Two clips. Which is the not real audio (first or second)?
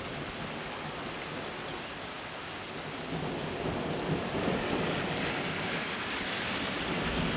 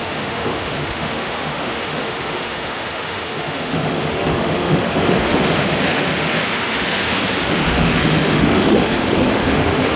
second